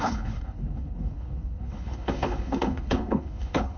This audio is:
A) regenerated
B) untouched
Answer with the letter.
A